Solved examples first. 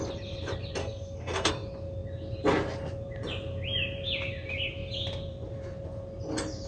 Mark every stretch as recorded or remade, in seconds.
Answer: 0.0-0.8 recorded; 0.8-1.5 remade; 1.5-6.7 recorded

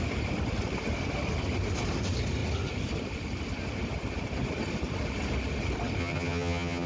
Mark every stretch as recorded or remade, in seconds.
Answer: 0.0-6.0 recorded; 6.0-6.9 remade

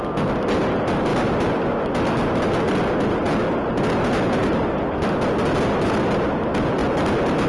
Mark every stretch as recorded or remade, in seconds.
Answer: 0.0-7.5 recorded

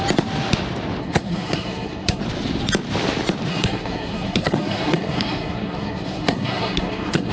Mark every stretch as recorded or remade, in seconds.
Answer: 0.0-1.0 recorded; 1.0-2.2 remade; 2.2-3.5 recorded; 3.5-7.3 remade

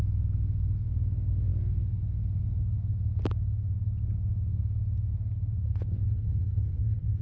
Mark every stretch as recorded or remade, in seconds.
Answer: 0.0-6.0 recorded; 6.0-7.2 remade

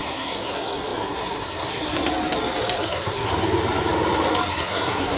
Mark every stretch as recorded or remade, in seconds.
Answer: 0.0-2.0 remade; 2.0-2.8 recorded; 2.8-3.3 remade; 3.3-4.5 recorded; 4.5-5.2 remade

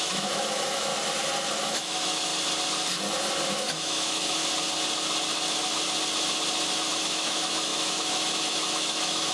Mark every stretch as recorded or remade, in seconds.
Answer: 0.0-0.9 remade; 0.9-1.6 recorded; 1.6-2.3 remade; 2.3-3.5 recorded; 3.5-4.4 remade; 4.4-6.9 recorded; 6.9-9.3 remade